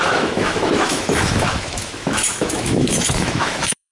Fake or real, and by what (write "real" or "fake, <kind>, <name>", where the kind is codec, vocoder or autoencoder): fake, autoencoder, DAC-VAE